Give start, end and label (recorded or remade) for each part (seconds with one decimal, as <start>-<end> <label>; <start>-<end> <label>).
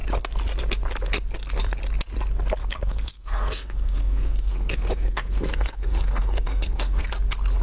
0.0-2.6 recorded; 2.6-7.1 remade; 7.1-7.6 recorded